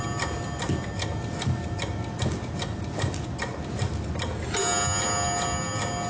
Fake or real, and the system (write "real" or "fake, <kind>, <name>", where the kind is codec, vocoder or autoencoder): real